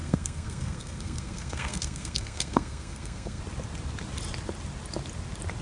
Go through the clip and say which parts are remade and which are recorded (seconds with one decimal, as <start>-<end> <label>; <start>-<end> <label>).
0.0-3.4 remade; 3.4-5.6 recorded

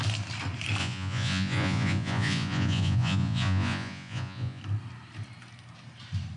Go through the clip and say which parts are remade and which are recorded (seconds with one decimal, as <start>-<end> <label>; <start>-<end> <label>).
0.0-0.8 recorded; 0.8-4.6 remade; 4.6-6.4 recorded

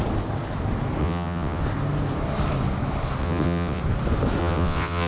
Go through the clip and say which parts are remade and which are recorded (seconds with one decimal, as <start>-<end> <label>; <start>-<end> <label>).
0.0-1.0 recorded; 1.0-1.6 remade; 1.6-3.2 recorded; 3.2-3.8 remade; 3.8-4.4 recorded; 4.4-5.1 remade

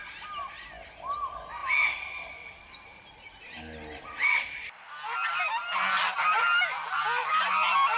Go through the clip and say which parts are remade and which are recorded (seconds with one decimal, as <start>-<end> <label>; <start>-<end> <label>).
0.0-8.0 recorded

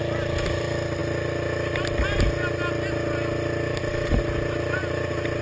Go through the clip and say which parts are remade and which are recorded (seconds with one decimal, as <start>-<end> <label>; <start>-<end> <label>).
0.0-5.4 recorded

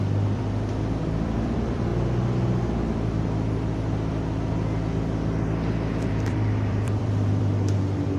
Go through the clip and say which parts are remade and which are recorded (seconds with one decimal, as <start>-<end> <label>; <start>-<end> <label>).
0.0-1.9 remade; 1.9-6.1 recorded; 6.1-8.2 remade